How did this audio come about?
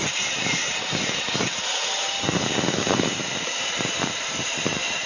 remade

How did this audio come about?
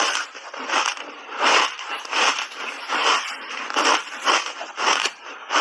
remade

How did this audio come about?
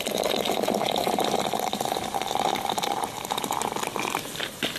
recorded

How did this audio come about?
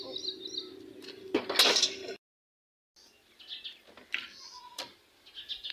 recorded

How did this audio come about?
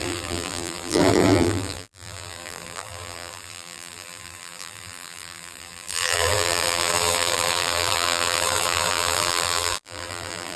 remade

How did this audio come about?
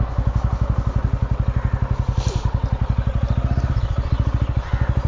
recorded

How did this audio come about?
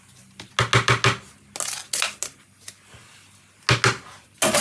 recorded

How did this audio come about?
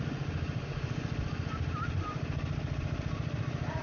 recorded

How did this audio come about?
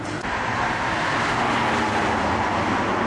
recorded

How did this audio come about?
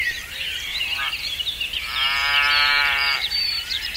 remade